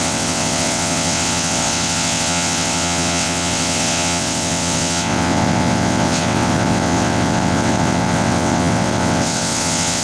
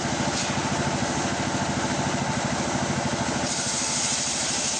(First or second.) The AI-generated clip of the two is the first